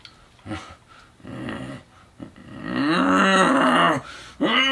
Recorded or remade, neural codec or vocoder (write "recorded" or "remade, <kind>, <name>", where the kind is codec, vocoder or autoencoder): recorded